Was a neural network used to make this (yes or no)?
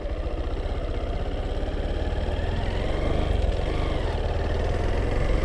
no